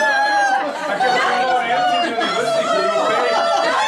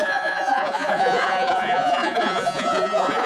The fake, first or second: second